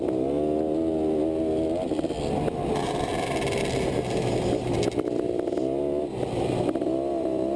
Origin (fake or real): real